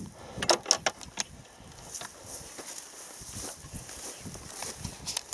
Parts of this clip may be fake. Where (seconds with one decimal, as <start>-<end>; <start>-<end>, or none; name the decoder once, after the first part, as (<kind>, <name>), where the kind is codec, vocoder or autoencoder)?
none